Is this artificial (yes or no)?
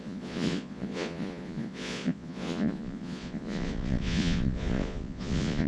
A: yes